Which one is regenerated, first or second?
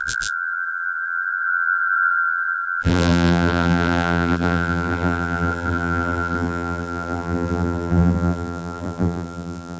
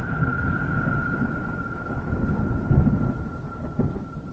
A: first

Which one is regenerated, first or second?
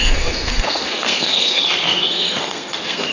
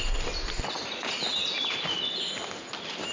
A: first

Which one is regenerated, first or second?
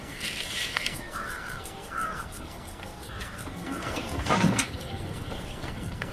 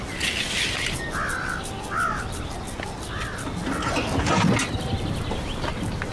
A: first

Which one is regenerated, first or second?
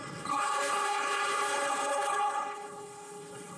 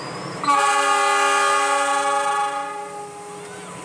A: first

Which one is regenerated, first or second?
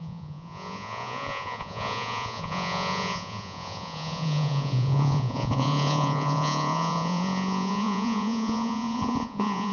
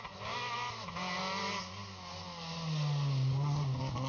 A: first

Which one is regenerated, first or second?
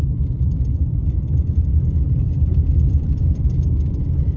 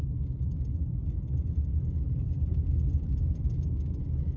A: first